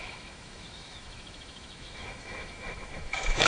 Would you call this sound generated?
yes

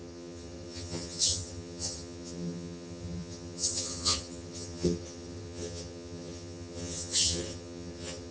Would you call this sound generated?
yes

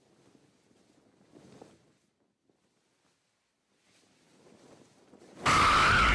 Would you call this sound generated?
no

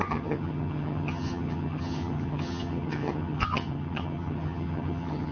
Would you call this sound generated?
yes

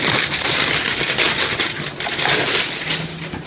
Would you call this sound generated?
no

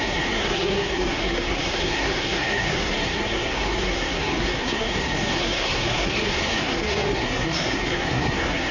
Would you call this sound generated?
yes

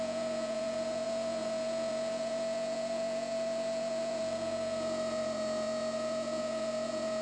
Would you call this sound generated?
yes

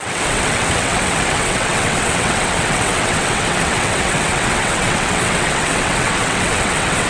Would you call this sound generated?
yes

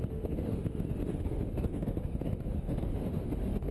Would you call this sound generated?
yes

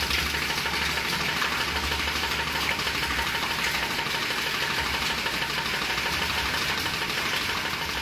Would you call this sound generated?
no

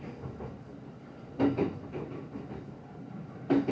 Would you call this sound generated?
no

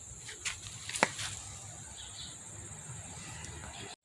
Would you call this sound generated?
no